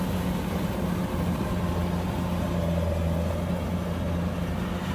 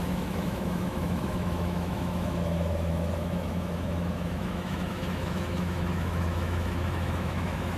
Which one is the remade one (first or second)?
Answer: second